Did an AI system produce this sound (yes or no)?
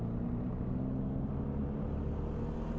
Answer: no